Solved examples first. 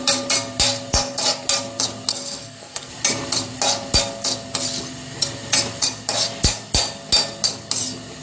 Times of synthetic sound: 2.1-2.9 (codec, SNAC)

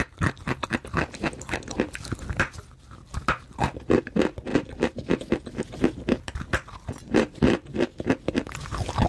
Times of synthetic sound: none

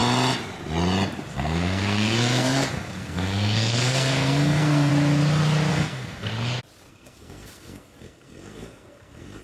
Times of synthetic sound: 1.3-4.9 (codec, SNAC); 5.7-6.3; 6.9-9.4

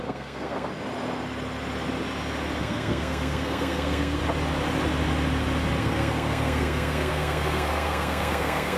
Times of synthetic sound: 0.0-0.7 (codec, SNAC); 2.6-4.2; 5.8-8.8

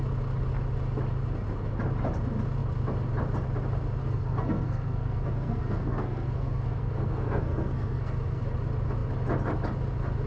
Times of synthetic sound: 4.0-8.4 (codec, SNAC)

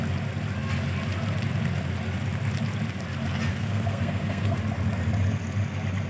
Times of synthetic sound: 3.5-4.6 (codec, SNAC)